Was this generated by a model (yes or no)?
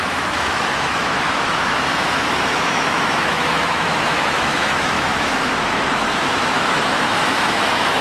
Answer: yes